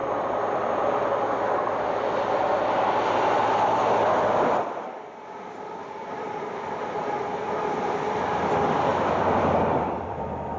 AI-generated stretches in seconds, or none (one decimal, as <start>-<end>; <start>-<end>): 0.0-1.0; 8.9-10.6